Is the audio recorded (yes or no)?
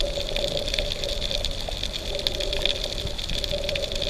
no